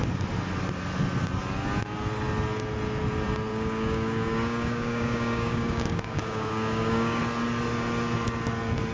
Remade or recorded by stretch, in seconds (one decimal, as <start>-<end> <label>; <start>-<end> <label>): 0.0-3.5 recorded; 3.5-7.2 remade; 7.2-8.9 recorded